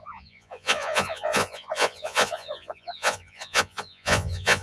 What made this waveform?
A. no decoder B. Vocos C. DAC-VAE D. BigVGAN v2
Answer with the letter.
B